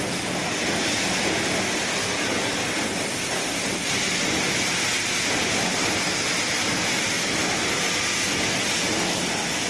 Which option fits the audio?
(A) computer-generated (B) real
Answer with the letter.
B